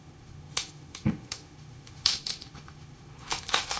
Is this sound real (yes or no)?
no